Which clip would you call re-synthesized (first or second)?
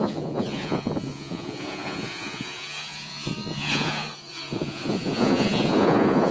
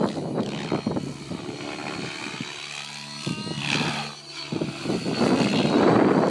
first